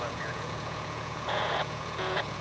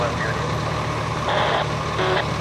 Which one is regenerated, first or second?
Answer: first